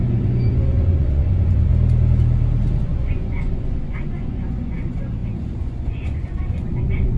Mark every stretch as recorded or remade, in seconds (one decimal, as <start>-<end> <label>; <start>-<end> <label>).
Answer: 0.0-1.7 remade; 1.7-2.8 recorded; 2.8-7.2 remade